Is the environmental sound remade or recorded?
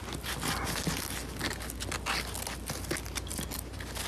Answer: recorded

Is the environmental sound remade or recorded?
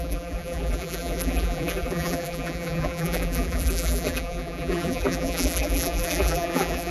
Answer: remade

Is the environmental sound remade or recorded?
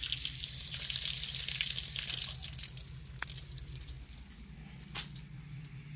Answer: recorded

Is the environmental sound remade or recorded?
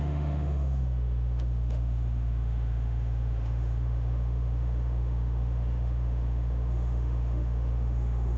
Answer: remade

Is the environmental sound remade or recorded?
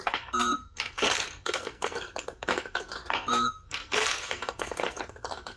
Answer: remade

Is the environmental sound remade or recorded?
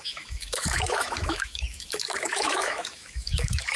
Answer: remade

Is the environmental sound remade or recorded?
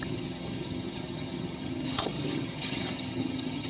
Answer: remade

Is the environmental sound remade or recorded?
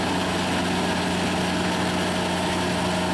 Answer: recorded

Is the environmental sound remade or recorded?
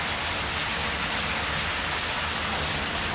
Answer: recorded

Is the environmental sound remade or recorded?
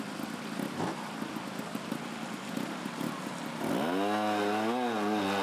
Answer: recorded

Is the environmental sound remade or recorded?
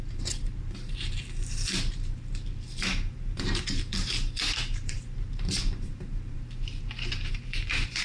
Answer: remade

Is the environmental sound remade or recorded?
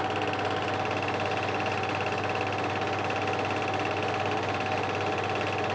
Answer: recorded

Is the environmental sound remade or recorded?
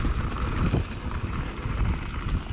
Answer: recorded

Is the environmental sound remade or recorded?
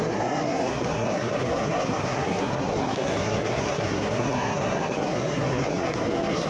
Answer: remade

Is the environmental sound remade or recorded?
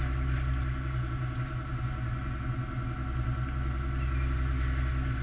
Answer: recorded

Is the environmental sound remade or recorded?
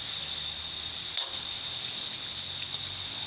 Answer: recorded